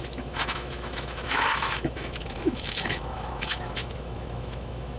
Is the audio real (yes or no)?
no